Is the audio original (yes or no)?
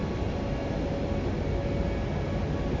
yes